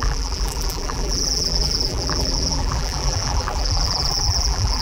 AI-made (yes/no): yes